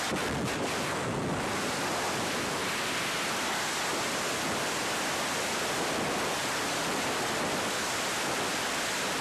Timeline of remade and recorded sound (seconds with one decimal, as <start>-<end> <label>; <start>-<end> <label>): 0.0-9.2 recorded